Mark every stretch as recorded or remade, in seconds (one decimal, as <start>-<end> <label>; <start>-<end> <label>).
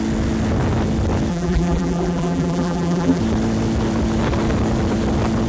0.0-1.3 recorded; 1.3-3.2 remade; 3.2-5.5 recorded